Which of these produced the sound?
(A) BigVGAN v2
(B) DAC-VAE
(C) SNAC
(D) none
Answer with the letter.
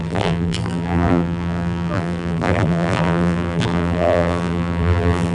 A